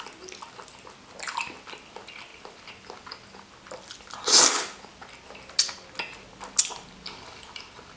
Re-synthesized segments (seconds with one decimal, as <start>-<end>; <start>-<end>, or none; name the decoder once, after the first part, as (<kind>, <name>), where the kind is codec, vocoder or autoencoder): none